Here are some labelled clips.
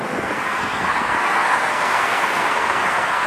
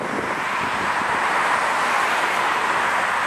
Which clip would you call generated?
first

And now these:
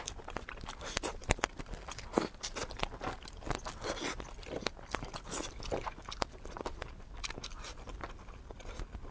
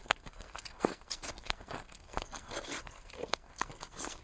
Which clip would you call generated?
second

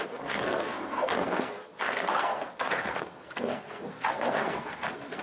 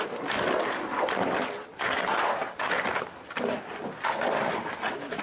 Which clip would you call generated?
first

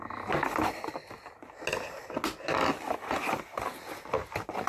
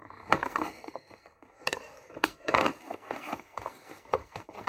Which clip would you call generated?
second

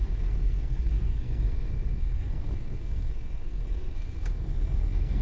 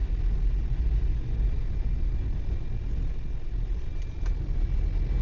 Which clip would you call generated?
first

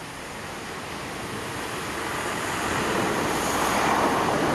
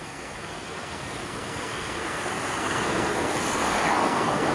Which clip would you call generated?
second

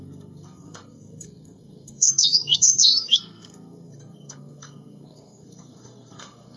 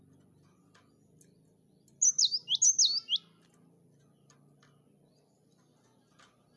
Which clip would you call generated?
first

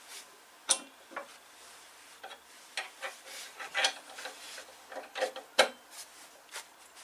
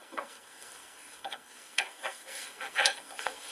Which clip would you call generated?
second